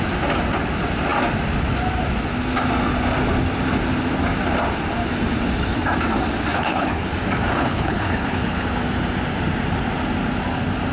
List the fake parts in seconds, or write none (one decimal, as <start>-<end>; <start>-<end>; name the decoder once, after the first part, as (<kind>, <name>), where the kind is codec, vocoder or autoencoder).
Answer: 6.5-7.1 (codec, HILCodec); 7.6-8.4